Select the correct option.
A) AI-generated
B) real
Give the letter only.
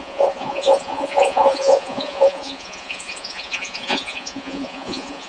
A